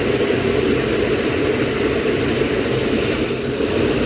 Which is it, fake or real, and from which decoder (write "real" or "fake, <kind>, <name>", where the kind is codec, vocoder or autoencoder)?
real